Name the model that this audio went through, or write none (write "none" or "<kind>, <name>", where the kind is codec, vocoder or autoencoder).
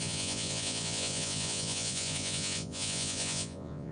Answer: vocoder, Vocos